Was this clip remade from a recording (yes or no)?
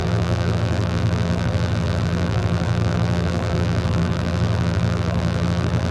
yes